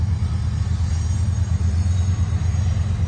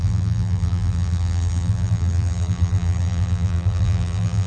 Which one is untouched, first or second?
first